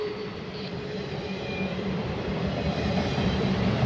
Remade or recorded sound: remade